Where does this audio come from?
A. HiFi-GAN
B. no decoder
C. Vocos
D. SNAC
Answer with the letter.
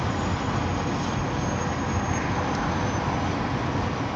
B